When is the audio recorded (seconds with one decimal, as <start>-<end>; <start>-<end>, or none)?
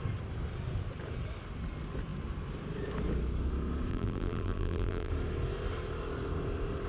0.0-3.9; 5.1-6.9